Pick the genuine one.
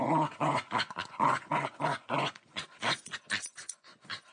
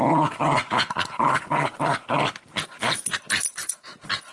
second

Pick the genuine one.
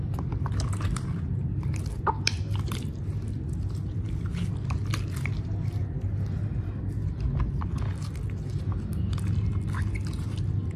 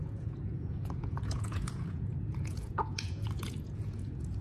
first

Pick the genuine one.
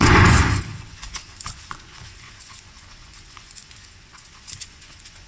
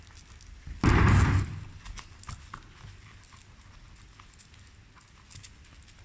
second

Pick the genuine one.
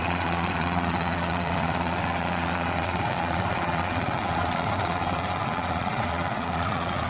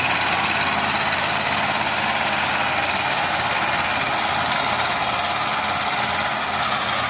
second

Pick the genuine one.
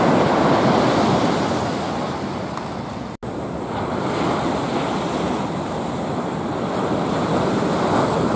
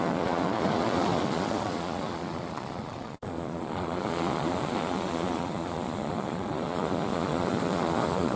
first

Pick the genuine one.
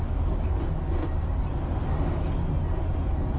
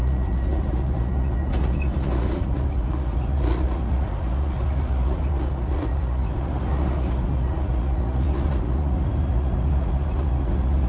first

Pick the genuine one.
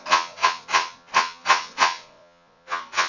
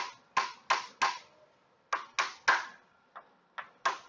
second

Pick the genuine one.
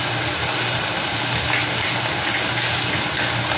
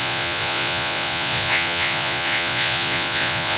first